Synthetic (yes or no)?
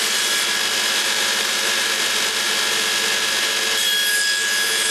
no